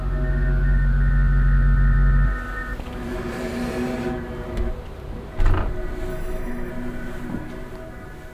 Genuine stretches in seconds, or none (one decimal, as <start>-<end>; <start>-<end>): 0.0-6.1; 6.7-8.3